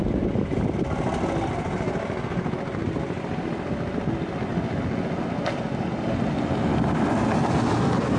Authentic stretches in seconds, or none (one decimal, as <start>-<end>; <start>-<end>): 0.0-8.2